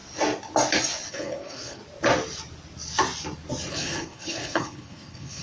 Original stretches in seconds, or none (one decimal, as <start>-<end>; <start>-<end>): 0.0-1.1; 1.8-3.7